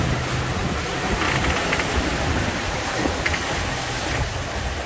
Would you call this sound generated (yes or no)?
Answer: no